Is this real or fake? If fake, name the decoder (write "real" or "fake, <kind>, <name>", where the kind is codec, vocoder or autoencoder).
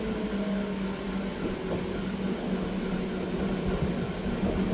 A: real